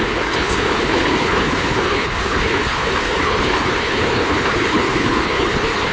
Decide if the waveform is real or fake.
fake